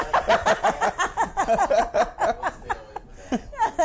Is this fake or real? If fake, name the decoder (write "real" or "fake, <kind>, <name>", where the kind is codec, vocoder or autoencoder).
real